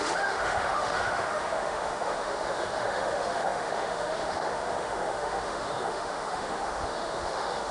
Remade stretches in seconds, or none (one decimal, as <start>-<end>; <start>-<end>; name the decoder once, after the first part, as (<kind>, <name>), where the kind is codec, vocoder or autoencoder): 0.0-7.7 (autoencoder, DAC-VAE)